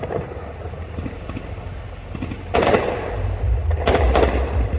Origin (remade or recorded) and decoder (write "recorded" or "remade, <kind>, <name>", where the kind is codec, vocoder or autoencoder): recorded